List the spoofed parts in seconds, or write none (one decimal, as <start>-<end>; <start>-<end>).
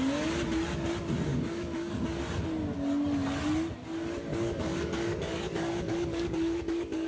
1.3-2.2; 4.3-7.1